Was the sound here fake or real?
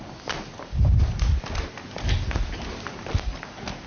real